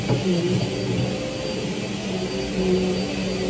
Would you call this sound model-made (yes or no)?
no